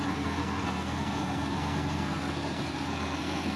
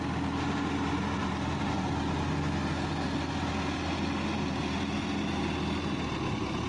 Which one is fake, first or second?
first